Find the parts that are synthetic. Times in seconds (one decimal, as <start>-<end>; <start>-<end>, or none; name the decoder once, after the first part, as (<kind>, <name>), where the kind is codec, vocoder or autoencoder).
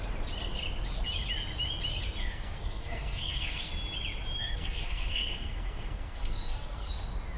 2.2-3.7 (codec, SNAC); 4.4-6.9